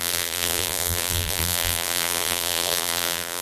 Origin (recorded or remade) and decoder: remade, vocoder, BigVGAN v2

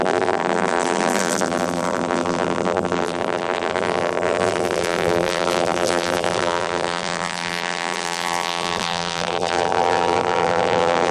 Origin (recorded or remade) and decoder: remade, vocoder, BigVGAN v2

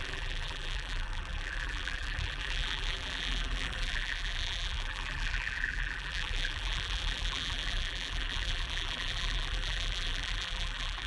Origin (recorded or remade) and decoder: remade, vocoder, BigVGAN v2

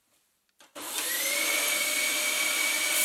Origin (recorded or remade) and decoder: remade, vocoder, BigVGAN v2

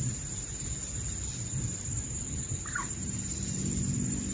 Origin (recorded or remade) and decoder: remade, vocoder, BigVGAN v2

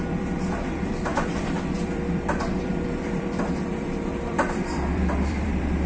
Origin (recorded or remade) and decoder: remade, vocoder, BigVGAN v2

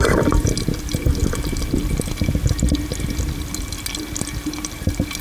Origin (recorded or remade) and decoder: recorded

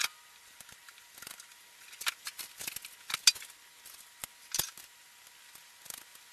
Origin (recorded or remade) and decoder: recorded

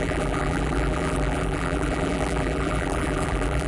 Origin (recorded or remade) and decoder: remade, vocoder, BigVGAN v2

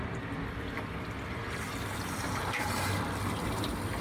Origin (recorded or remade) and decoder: remade, vocoder, BigVGAN v2